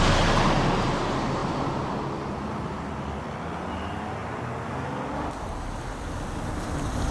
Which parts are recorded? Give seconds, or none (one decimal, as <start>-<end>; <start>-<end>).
0.0-7.1